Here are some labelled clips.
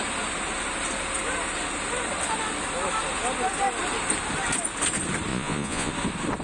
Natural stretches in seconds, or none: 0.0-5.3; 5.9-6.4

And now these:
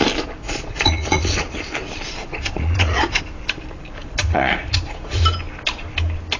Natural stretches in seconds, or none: 0.0-0.4; 1.4-2.2; 3.2-4.0; 5.2-6.4

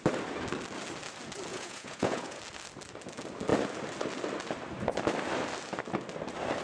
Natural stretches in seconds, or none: 0.0-1.5; 2.4-6.6

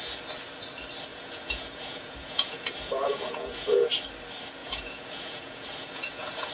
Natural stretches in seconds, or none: 0.0-1.1; 3.9-4.6

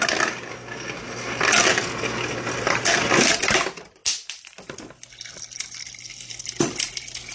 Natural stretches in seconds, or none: 0.0-7.3

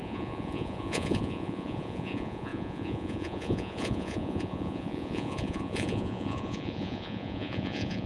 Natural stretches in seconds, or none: none

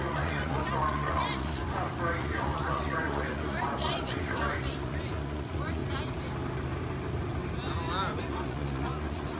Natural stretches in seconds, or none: 1.6-2.2; 5.8-8.2